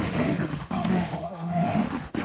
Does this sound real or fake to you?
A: fake